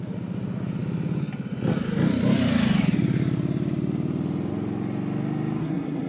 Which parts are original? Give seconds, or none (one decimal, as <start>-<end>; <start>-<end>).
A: 0.0-5.6